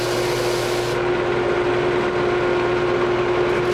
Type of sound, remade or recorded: recorded